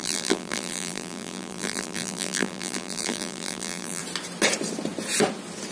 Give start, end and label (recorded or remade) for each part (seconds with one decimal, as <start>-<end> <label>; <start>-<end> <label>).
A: 0.0-4.0 remade; 4.0-5.7 recorded